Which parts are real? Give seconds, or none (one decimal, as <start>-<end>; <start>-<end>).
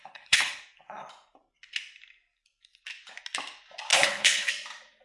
0.6-3.9; 4.5-5.0